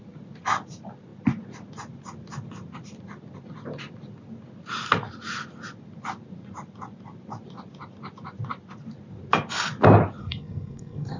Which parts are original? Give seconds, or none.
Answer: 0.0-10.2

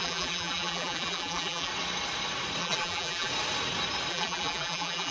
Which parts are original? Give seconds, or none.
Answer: 1.7-2.6; 3.3-4.1